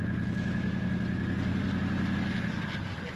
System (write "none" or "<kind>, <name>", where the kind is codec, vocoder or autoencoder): none